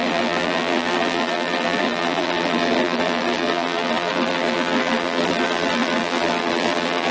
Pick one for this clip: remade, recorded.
remade